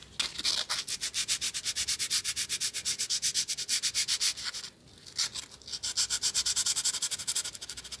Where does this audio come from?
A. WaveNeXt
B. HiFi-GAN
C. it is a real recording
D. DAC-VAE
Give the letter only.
C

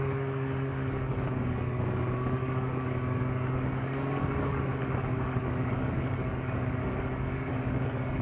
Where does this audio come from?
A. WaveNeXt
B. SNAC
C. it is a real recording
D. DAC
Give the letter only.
D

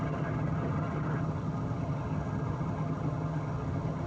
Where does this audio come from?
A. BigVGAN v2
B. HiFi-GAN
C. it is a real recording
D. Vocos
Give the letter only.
B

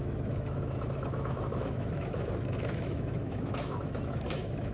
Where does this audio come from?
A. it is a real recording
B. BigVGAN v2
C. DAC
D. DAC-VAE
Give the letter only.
D